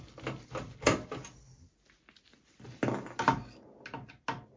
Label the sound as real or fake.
real